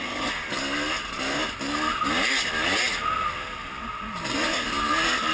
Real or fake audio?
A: real